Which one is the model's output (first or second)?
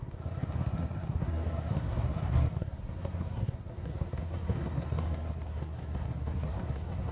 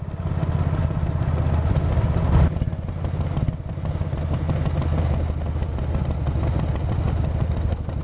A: first